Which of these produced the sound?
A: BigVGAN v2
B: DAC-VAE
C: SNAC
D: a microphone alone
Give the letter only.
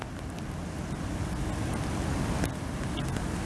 D